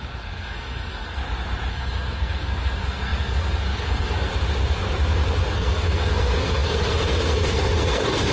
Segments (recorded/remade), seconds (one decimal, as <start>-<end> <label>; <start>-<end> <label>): 0.0-1.2 remade; 1.2-1.7 recorded; 1.7-4.3 remade; 4.3-5.5 recorded; 5.5-8.3 remade

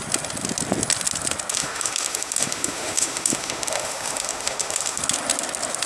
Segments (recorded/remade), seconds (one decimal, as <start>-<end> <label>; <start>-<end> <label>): 0.0-1.5 recorded; 1.5-5.0 remade; 5.0-5.9 recorded